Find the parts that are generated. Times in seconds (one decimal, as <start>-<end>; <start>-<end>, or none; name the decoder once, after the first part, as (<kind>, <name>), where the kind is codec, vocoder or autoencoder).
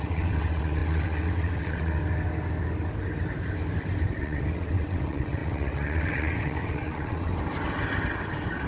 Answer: 0.0-2.0 (vocoder, WaveNeXt); 4.2-7.3